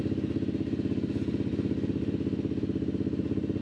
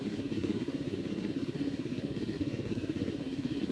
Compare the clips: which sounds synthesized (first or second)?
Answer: second